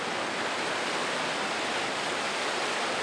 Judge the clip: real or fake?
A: real